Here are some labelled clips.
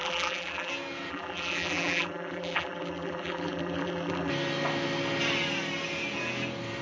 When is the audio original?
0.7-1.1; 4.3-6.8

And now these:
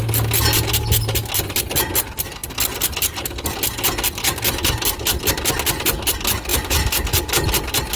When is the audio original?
0.0-8.0

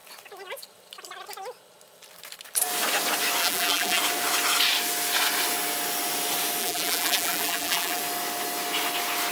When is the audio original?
0.0-3.4; 4.0-6.6; 8.0-9.3

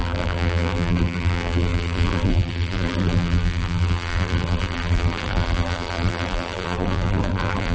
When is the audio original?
none